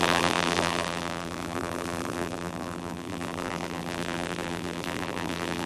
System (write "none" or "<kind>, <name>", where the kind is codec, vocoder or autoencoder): vocoder, BigVGAN v2